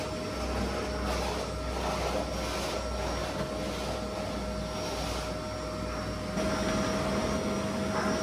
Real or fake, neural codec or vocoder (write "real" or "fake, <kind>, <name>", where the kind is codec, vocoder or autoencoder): real